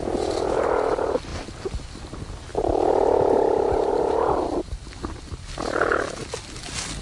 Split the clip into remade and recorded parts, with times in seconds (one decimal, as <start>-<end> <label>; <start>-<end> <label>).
0.0-7.0 recorded